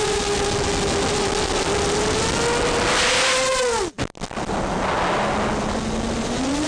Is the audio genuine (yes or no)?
yes